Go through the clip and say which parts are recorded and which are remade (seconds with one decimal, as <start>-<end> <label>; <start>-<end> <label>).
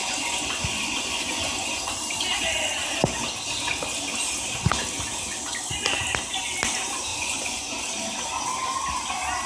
0.0-1.9 remade; 1.9-7.1 recorded; 7.1-7.8 remade; 7.8-9.5 recorded